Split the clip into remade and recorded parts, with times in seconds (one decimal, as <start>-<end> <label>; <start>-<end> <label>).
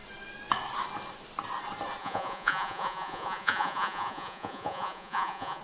0.0-2.0 recorded; 2.0-5.6 remade